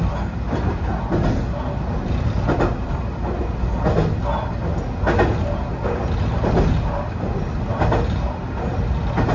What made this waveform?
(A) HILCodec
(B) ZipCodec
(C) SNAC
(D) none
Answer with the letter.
D